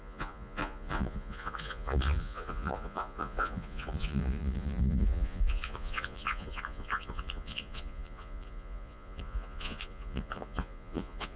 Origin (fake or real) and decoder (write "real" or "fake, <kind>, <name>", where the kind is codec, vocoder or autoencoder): fake, vocoder, Vocos